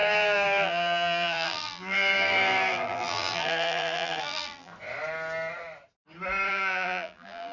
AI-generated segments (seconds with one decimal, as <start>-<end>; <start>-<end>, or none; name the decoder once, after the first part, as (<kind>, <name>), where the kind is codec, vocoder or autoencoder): 0.0-4.7 (vocoder, BigVGAN v2); 6.5-7.5